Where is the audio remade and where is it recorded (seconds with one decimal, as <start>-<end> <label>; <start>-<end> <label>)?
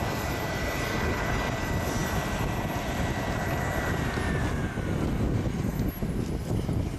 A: 0.0-7.0 recorded